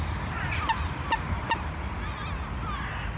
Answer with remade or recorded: recorded